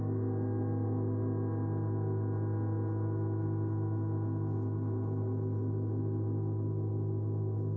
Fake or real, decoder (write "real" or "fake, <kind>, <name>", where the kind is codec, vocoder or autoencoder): real